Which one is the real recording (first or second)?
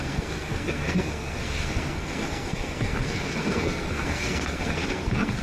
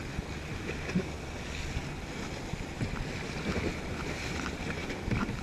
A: second